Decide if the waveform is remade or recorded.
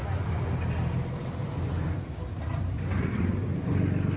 recorded